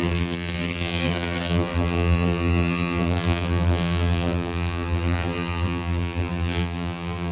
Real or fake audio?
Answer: fake